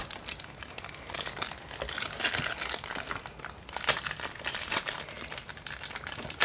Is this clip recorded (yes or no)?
yes